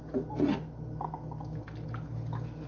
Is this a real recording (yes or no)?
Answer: yes